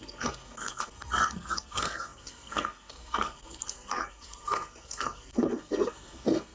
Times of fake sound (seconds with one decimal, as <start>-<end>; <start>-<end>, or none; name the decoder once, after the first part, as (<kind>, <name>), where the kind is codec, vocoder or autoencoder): 0.0-6.5 (codec, SNAC)